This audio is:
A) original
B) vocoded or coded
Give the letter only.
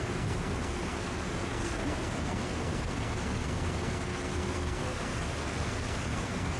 B